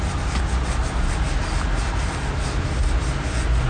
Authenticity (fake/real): real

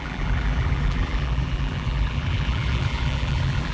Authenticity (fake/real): fake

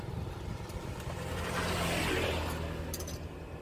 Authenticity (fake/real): real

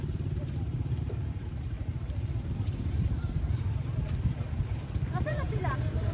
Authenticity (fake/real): fake